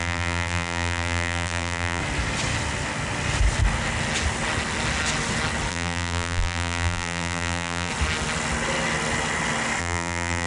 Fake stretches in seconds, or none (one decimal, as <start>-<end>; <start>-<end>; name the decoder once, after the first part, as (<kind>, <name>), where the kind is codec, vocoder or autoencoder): 0.0-2.0 (vocoder, BigVGAN v2); 5.7-7.9; 9.8-10.5